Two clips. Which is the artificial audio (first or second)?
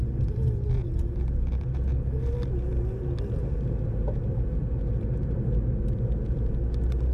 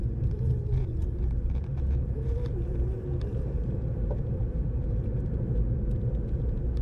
second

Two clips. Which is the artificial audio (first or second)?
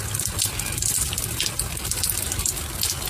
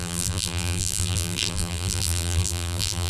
second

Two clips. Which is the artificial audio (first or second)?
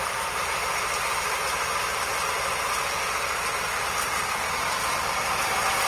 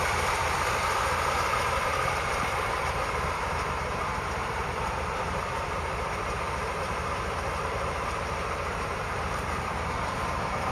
second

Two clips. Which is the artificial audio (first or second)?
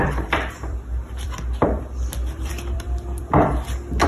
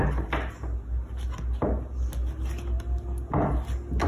first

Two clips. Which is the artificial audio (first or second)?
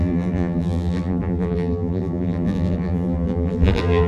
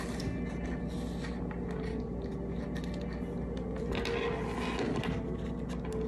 first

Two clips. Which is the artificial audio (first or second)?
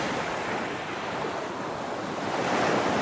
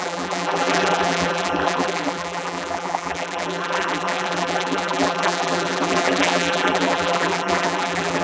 second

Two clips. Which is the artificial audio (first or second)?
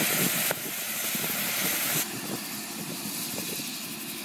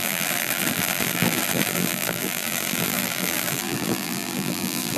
second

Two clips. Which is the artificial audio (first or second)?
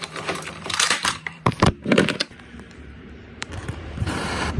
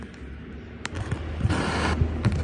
first